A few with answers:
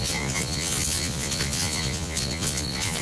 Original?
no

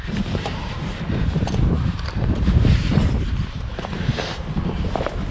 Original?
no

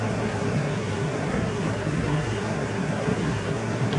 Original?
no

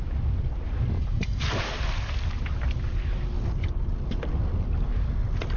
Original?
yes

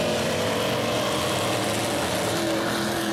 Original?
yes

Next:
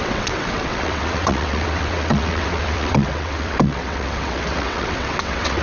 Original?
no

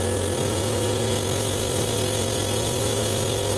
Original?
yes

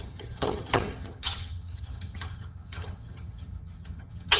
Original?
no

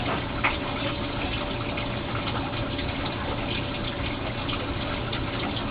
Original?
yes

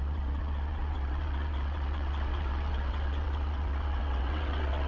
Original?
no